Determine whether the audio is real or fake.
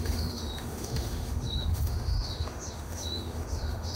fake